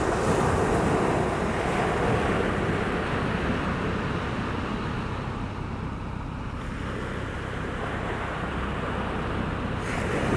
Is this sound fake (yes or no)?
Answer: no